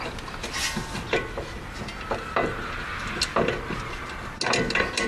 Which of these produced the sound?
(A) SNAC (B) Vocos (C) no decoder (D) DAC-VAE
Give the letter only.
C